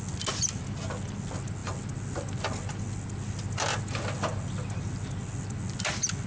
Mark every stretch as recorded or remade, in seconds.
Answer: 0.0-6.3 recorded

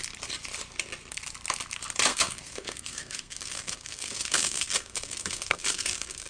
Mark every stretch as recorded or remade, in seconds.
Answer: 0.0-2.1 recorded; 2.1-6.3 remade